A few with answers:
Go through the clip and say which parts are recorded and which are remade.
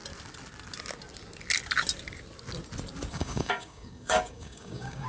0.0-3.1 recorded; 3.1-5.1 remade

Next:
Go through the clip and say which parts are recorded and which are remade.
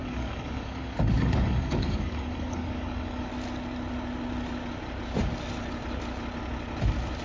0.0-3.3 remade; 3.3-7.2 recorded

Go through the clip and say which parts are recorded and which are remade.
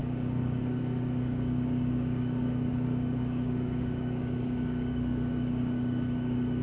0.0-6.6 remade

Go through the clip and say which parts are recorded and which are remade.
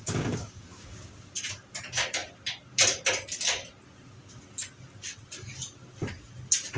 0.0-1.1 remade; 1.1-6.8 recorded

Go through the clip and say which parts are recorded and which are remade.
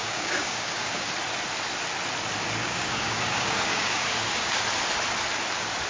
0.0-1.1 remade; 1.1-2.6 recorded; 2.6-4.6 remade; 4.6-5.9 recorded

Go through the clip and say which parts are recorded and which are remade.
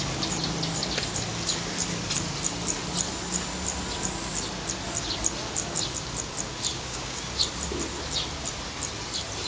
0.0-6.7 recorded; 6.7-7.2 remade; 7.2-9.5 recorded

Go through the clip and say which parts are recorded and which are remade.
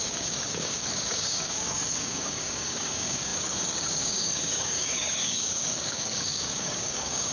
0.0-7.3 remade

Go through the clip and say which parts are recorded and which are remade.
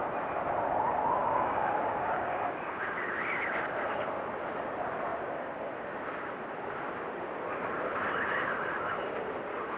0.0-1.2 recorded; 1.2-2.8 remade; 2.8-9.8 recorded